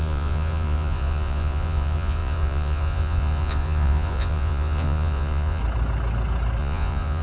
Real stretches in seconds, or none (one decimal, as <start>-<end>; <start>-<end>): 5.6-6.6